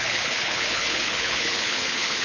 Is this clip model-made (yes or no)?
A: yes